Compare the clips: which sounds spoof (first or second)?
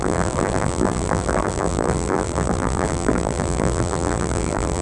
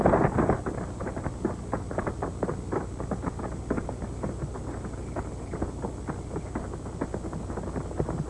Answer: first